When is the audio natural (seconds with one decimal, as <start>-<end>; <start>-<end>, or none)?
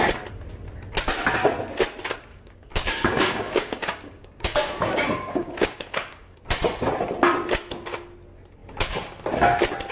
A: 0.0-2.3; 6.4-9.9